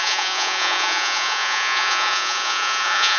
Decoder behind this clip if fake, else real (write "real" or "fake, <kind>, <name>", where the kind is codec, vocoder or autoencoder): fake, vocoder, Vocos